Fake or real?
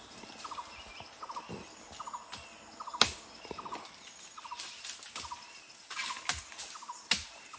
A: real